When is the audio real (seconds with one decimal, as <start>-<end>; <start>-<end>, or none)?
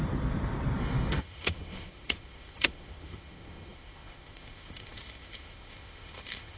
0.0-0.8